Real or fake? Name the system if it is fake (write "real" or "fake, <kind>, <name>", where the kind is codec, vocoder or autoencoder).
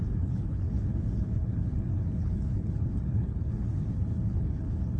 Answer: fake, codec, HILCodec